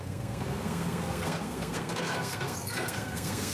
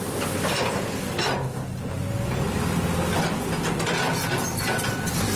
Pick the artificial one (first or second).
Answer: first